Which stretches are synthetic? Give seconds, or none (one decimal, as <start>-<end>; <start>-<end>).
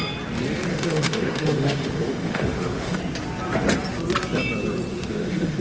0.7-3.0; 4.9-5.6